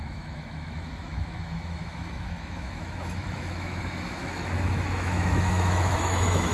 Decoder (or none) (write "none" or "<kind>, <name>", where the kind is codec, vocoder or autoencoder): autoencoder, DAC-VAE